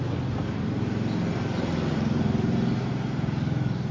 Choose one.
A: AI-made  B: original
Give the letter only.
B